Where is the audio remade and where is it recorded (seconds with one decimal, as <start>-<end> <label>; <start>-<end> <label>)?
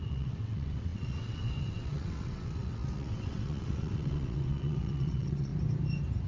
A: 0.0-5.5 remade; 5.5-6.3 recorded